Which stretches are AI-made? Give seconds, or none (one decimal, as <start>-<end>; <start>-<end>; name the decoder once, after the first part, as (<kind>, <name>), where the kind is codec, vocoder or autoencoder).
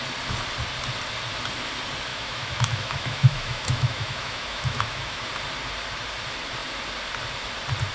2.1-5.3 (autoencoder, DAC-VAE)